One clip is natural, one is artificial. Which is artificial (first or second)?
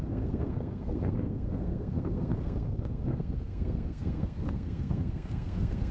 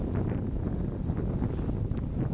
first